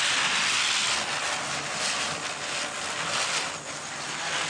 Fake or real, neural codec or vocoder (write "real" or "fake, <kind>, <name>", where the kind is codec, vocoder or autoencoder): real